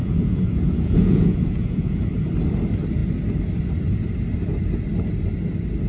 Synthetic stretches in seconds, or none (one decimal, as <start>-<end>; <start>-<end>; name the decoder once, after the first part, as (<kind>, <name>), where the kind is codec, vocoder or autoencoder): 0.0-2.0 (vocoder, Vocos)